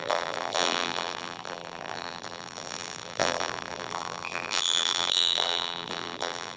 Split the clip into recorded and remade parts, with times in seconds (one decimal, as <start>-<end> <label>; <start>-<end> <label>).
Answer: 0.0-6.6 remade